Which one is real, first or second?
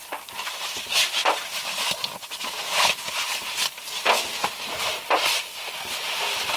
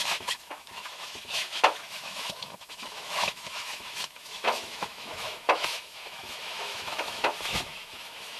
first